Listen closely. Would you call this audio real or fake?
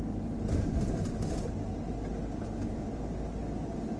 real